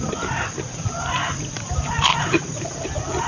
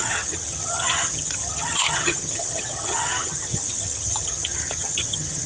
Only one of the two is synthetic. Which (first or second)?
second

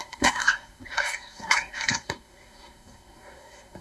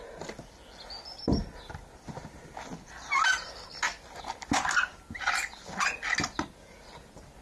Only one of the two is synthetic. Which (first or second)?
first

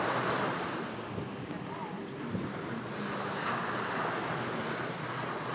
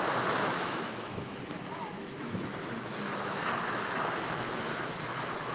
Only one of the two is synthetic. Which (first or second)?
second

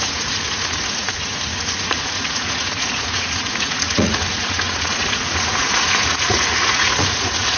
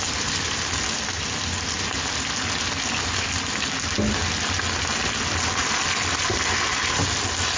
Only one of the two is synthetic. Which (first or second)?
first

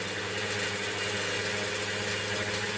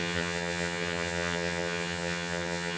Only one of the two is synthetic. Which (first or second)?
second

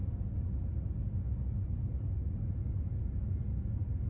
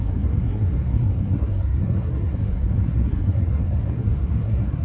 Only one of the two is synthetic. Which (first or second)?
second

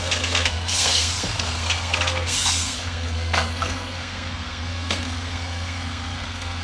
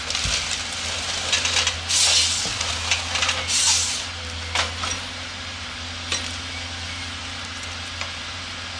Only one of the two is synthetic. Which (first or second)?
first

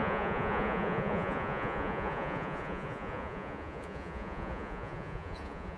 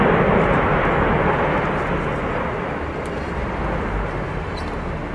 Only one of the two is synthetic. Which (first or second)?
first